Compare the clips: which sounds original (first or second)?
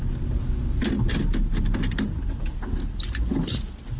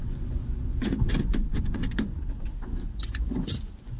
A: first